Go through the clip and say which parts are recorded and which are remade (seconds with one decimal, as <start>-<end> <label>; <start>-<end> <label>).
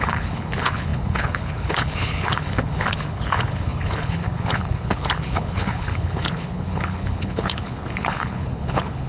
0.0-9.1 remade